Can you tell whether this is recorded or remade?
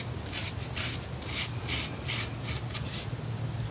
recorded